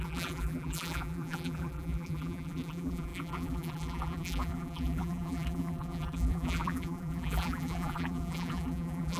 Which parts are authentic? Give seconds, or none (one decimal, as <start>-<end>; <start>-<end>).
none